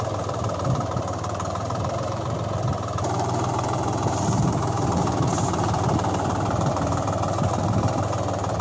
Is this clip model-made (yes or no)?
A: yes